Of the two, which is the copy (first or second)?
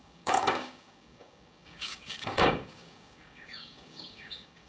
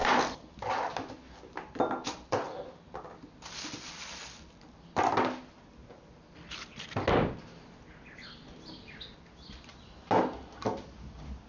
first